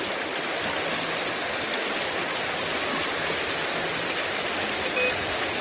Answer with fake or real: real